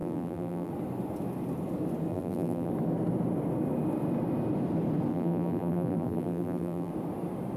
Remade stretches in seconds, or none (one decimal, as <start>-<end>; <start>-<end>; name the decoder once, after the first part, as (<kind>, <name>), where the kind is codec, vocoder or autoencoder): 0.0-0.7 (vocoder, BigVGAN v2); 2.1-2.7; 5.1-6.9